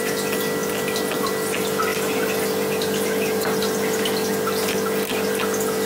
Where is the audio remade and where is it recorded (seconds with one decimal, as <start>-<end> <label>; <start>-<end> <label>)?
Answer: 0.0-5.9 recorded